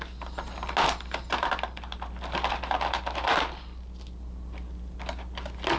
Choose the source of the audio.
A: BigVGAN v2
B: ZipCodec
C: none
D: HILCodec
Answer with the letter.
C